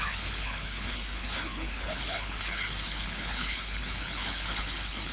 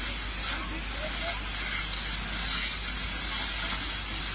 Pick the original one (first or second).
second